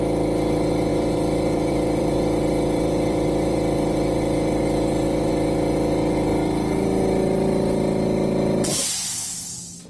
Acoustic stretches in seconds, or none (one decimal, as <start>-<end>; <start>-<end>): 0.0-0.9; 5.3-8.7; 9.5-9.9